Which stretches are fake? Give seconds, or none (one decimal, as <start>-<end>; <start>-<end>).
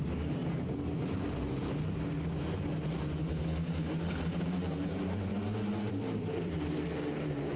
0.0-0.4; 4.2-5.3; 5.9-7.6